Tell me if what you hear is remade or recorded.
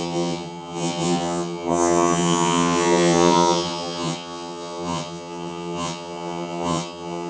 remade